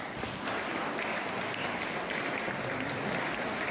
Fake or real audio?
real